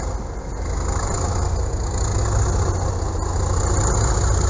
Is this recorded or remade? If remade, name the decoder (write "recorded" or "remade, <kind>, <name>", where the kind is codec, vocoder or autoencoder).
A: recorded